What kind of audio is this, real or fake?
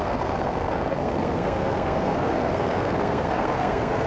fake